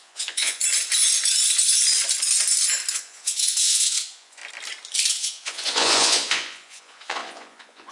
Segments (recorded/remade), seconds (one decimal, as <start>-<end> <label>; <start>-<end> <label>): 0.0-0.6 remade; 0.6-2.9 recorded; 2.9-4.4 remade; 4.4-5.1 recorded; 5.1-7.9 remade